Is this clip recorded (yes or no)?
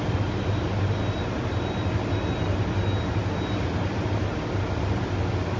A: yes